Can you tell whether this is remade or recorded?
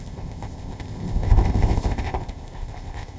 remade